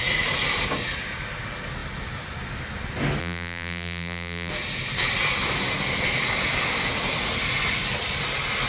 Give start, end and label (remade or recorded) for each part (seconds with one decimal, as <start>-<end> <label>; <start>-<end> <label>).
0.0-3.2 recorded; 3.2-4.5 remade; 4.5-8.7 recorded